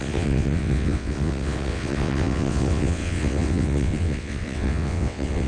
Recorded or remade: remade